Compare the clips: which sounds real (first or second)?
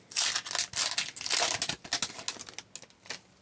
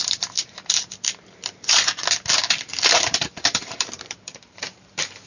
first